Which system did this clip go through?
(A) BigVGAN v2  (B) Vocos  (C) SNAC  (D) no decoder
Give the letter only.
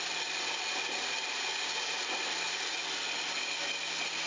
D